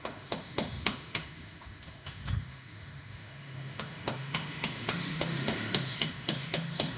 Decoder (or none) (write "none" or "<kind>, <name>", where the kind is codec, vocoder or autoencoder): autoencoder, DAC-VAE